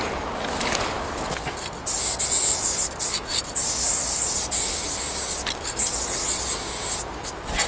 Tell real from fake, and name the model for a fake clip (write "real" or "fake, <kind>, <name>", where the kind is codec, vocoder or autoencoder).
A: real